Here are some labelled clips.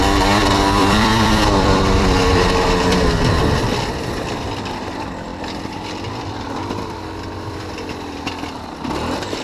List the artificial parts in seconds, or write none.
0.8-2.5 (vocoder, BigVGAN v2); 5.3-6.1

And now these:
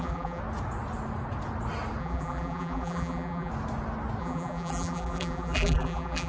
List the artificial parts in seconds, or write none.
0.0-0.4 (vocoder, BigVGAN v2); 2.0-3.5; 4.2-6.3

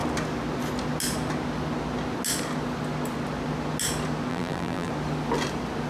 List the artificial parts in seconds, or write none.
4.3-4.9 (vocoder, BigVGAN v2)

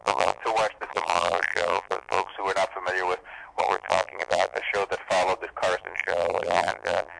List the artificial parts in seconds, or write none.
0.0-0.4 (vocoder, BigVGAN v2); 0.9-2.3; 3.6-4.6; 5.8-7.2

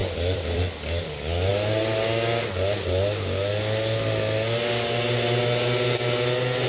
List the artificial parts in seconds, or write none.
0.0-0.6 (vocoder, BigVGAN v2)

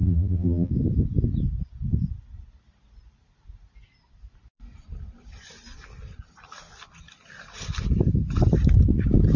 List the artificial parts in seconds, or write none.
0.0-0.7 (vocoder, BigVGAN v2)